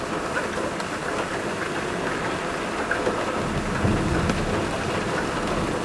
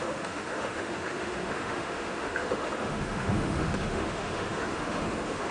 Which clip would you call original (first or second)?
first